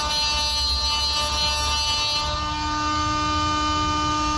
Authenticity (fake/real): real